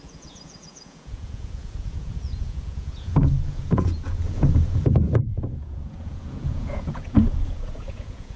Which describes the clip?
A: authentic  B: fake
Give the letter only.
B